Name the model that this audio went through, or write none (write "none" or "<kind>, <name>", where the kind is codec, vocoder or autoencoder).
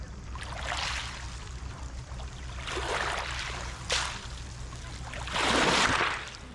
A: none